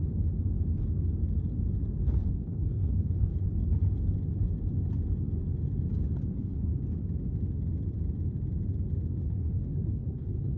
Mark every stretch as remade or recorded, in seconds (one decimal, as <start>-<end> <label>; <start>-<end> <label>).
0.0-2.3 recorded; 2.3-3.3 remade; 3.3-6.3 recorded; 6.3-6.7 remade; 6.7-9.2 recorded; 9.2-10.6 remade